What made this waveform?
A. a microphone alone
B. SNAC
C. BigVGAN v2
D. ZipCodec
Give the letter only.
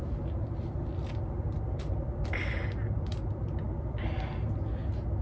A